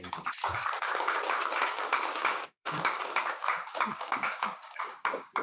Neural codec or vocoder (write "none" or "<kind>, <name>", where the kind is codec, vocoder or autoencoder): codec, DAC